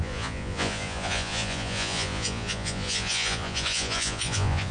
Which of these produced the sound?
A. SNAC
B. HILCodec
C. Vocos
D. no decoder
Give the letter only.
C